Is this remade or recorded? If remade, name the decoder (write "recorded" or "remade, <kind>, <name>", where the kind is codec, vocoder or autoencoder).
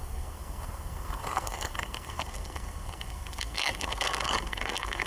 remade, codec, SNAC